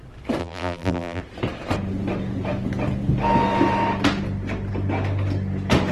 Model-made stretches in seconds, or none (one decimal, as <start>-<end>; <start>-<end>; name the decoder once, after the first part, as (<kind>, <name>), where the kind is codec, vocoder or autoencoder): 0.4-1.2 (vocoder, BigVGAN v2)